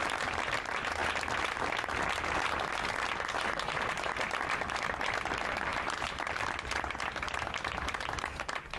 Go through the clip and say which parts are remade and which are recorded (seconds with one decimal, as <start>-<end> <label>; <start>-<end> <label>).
0.0-1.0 remade; 1.0-3.7 recorded; 3.7-8.8 remade